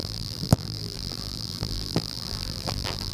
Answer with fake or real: fake